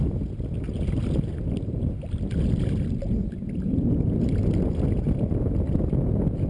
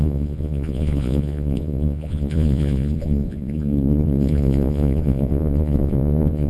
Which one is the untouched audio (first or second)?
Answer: first